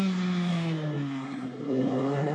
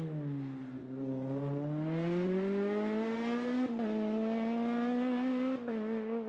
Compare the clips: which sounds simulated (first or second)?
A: first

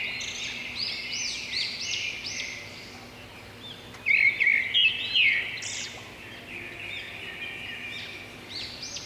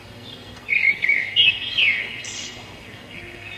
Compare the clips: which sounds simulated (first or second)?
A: second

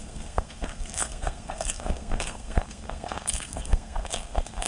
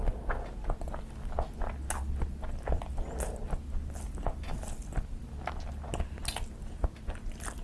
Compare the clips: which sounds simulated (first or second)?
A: first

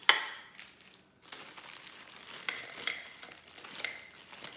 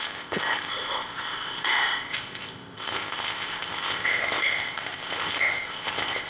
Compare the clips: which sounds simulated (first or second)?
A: second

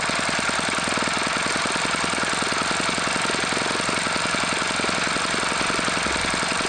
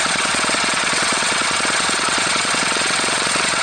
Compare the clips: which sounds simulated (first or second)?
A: second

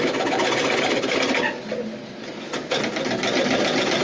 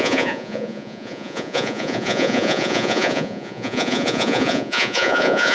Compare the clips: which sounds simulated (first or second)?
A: second